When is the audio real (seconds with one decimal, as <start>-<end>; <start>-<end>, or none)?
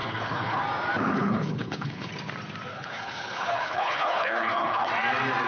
0.6-1.1; 2.1-2.7; 4.9-5.5